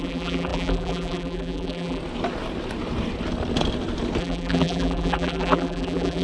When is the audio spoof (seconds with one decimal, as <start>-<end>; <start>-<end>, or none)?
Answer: 0.0-2.0; 4.2-6.2